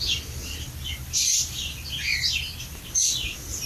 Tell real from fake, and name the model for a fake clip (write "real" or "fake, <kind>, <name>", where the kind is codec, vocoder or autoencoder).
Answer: real